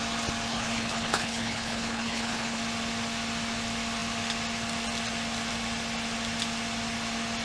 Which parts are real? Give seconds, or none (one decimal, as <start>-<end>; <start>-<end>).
0.0-0.5; 2.6-7.4